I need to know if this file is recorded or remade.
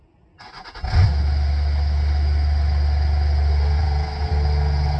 recorded